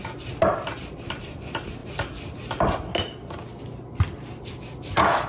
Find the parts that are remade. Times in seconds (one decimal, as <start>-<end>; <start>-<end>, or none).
none

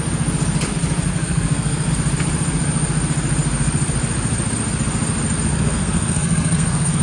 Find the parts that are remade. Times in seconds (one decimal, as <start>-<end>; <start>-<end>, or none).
1.1-1.9; 5.5-7.0

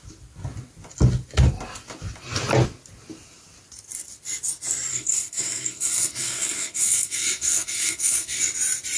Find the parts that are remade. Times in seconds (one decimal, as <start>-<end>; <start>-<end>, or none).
4.9-8.4

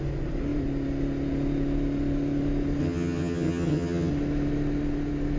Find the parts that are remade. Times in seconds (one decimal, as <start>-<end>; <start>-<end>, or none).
2.8-4.1

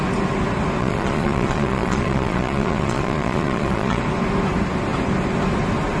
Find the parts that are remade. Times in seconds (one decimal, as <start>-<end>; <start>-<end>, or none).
0.8-4.0